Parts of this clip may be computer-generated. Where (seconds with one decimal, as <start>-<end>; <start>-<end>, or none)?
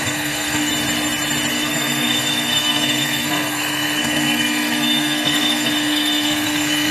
0.0-0.7; 1.5-6.9